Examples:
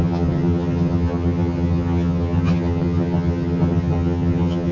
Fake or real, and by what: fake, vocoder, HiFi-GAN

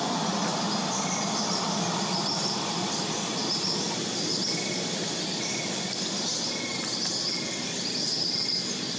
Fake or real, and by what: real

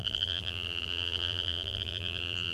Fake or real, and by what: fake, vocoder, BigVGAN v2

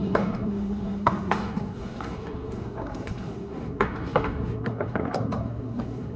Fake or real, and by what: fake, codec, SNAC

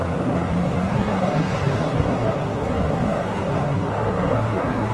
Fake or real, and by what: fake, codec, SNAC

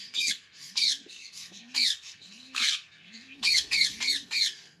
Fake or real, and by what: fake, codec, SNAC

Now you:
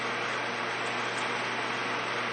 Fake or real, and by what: real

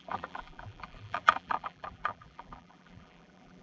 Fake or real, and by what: fake, vocoder, BigVGAN v2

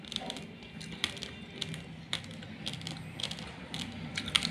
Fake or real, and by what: real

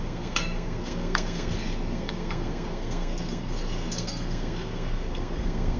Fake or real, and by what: fake, codec, SNAC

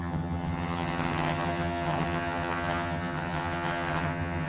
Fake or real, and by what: fake, vocoder, HiFi-GAN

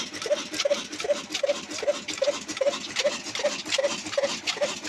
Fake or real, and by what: real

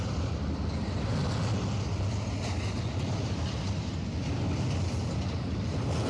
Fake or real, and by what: real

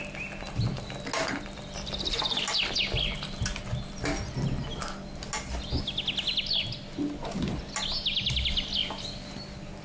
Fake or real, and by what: real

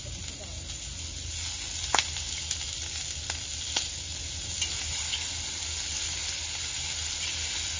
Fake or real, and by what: real